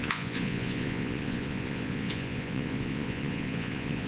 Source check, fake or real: fake